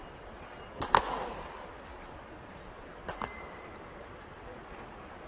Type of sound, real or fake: real